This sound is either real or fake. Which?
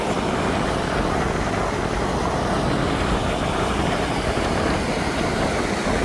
real